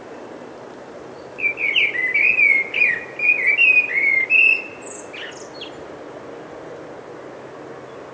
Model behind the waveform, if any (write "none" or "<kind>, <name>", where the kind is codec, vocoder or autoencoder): none